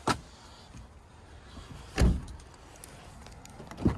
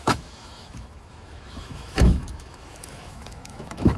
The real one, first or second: first